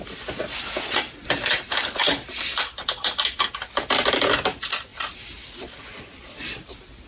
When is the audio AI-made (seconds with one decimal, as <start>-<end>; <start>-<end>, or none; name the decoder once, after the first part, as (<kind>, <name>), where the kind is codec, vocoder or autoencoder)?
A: 1.2-2.8 (vocoder, BigVGAN v2); 4.9-5.8